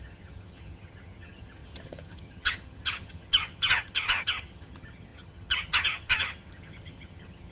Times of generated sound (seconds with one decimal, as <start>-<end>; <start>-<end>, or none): 0.0-7.5